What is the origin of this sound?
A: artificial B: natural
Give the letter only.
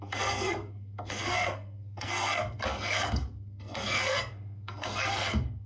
A